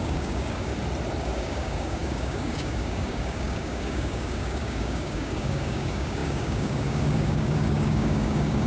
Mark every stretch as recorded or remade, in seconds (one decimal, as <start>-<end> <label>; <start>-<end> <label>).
0.0-0.7 remade; 0.7-1.2 recorded; 1.2-8.7 remade